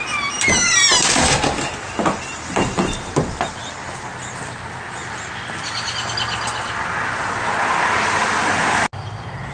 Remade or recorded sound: recorded